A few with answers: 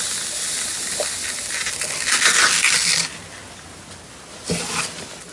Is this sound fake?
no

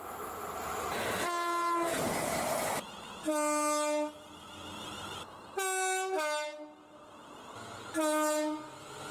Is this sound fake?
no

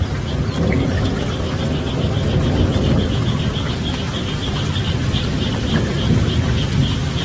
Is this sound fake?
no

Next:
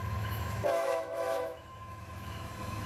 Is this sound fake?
yes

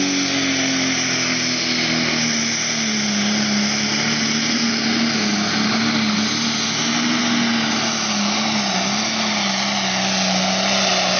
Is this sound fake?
no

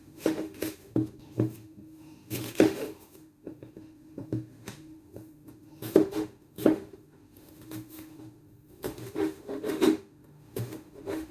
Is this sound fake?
yes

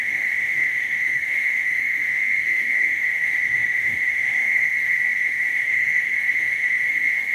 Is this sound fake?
yes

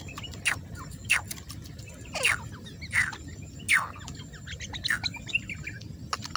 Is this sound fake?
no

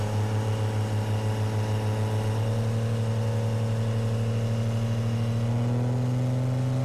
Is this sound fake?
no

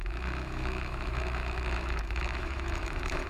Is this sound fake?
yes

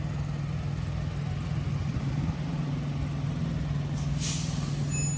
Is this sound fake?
no